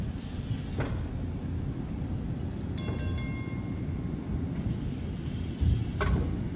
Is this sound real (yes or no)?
yes